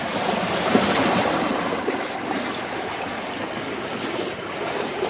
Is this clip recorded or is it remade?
recorded